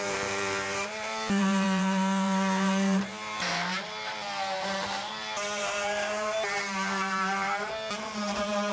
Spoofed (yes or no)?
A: yes